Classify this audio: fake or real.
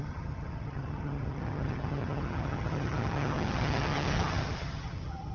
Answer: fake